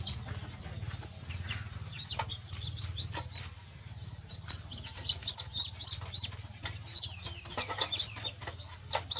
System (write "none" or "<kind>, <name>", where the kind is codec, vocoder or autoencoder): none